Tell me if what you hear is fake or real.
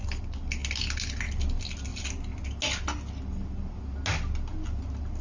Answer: real